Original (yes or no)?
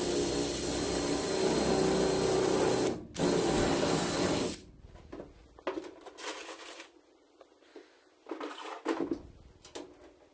yes